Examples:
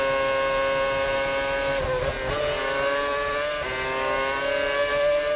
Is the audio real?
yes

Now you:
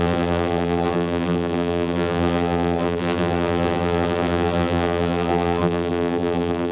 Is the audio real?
no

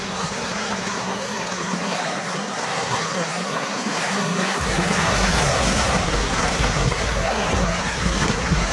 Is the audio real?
no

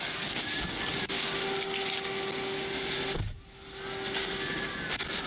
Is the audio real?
yes